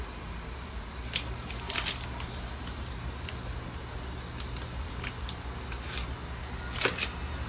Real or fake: real